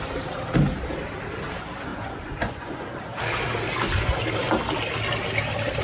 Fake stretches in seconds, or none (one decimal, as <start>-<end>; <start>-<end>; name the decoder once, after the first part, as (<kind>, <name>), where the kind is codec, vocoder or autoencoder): 1.9-3.0 (vocoder, Vocos)